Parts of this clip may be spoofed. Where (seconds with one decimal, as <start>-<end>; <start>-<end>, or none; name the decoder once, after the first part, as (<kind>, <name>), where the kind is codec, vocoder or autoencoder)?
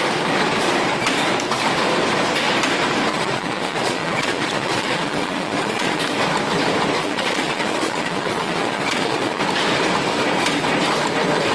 3.1-6.0 (vocoder, Vocos); 7.0-9.4